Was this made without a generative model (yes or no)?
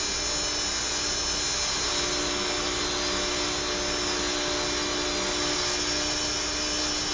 yes